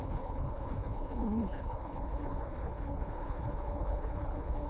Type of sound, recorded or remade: remade